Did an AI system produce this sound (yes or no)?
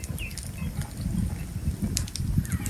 no